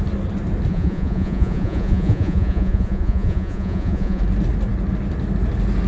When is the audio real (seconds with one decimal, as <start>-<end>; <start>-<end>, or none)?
0.0-0.7; 4.2-5.9